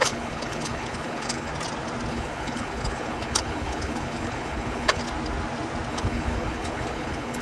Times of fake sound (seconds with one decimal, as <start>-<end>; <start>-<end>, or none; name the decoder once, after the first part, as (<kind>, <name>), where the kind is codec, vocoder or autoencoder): 0.0-1.5 (codec, HILCodec); 2.1-5.0; 5.9-7.4